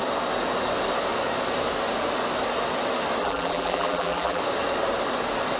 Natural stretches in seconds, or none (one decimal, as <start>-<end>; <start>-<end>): 0.0-3.2; 4.4-5.6